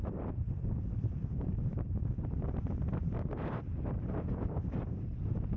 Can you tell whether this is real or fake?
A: fake